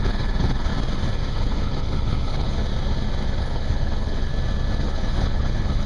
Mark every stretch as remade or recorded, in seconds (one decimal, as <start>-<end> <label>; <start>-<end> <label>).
0.0-0.7 remade; 0.7-1.3 recorded; 1.3-2.7 remade; 2.7-3.4 recorded; 3.4-4.3 remade; 4.3-4.8 recorded; 4.8-5.9 remade